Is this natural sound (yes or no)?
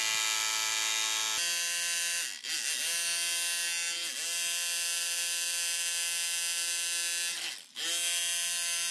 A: yes